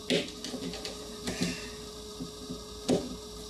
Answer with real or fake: real